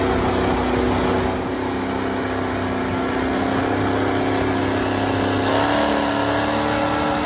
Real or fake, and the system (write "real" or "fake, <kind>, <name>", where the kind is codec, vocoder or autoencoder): real